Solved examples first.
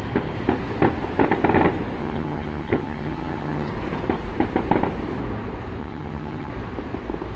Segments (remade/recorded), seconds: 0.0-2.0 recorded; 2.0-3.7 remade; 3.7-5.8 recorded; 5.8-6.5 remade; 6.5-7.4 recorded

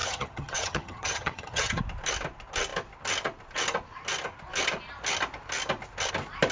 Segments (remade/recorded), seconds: 0.0-1.8 remade; 1.8-6.5 recorded

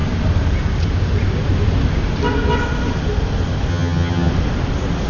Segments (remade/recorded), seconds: 0.0-3.7 recorded; 3.7-4.3 remade; 4.3-5.1 recorded